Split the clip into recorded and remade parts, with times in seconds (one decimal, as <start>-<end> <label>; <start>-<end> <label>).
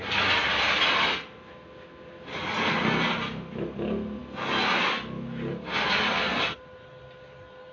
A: 0.0-7.7 recorded